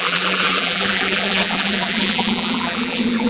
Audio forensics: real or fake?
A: fake